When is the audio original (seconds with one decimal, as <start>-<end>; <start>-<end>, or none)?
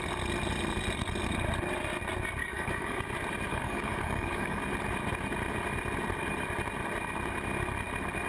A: 0.0-2.4; 3.0-3.5; 4.6-8.3